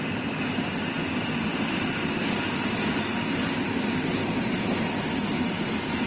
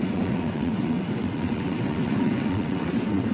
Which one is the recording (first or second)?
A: first